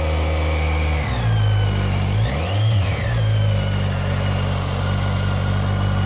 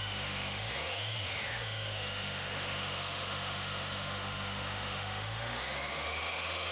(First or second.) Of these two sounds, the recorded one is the first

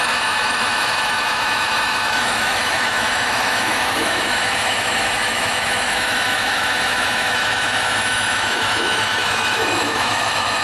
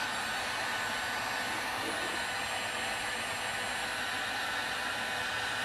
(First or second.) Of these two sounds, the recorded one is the second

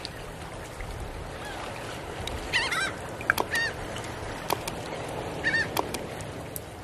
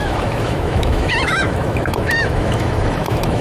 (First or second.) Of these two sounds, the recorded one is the first